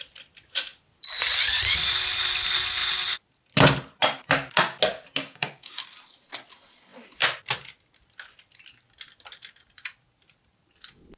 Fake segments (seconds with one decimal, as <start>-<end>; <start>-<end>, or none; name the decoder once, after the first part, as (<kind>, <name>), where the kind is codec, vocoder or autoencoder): 5.2-5.8 (codec, DAC)